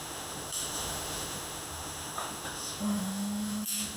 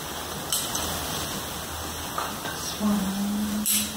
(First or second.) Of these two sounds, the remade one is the first